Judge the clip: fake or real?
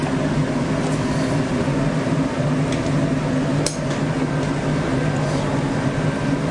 real